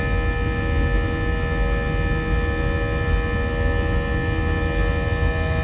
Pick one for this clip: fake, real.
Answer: real